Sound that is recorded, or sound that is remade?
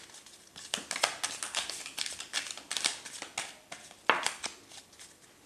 recorded